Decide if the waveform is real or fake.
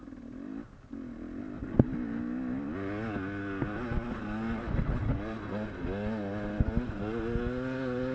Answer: real